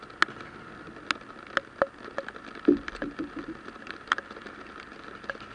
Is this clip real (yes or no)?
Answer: yes